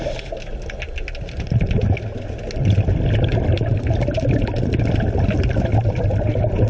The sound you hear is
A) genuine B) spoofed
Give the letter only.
A